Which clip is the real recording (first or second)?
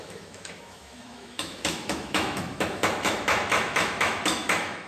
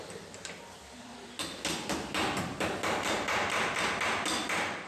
second